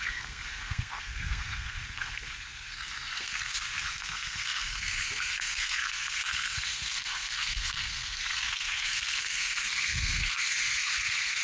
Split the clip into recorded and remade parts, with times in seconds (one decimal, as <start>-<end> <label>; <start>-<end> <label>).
0.0-11.4 remade